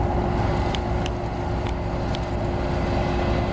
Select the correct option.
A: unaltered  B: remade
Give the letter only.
A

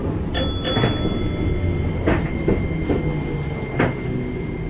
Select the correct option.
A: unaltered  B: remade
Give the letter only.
A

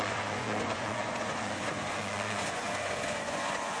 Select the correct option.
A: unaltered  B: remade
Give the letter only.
B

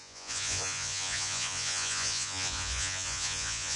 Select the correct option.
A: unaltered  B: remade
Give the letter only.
B